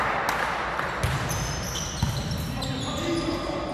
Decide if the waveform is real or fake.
real